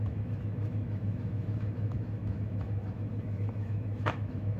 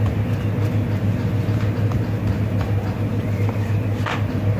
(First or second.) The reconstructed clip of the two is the first